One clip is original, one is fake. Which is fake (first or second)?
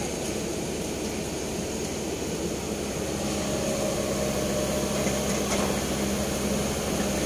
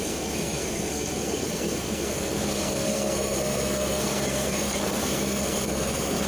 second